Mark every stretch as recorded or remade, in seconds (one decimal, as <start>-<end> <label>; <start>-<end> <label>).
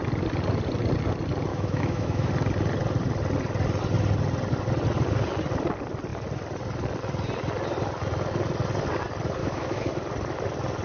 0.0-1.5 recorded; 1.5-2.3 remade; 2.3-9.4 recorded; 9.4-9.9 remade; 9.9-10.8 recorded